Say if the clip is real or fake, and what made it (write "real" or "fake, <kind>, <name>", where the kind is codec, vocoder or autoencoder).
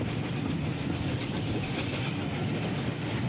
real